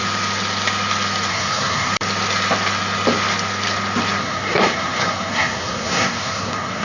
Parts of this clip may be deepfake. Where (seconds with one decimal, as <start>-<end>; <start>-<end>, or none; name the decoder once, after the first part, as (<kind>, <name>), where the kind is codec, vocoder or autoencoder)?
1.3-1.9 (codec, SNAC); 4.2-6.8